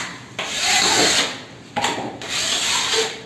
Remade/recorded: recorded